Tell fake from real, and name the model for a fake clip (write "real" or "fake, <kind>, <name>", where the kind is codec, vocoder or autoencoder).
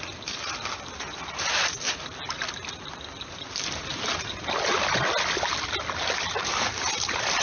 real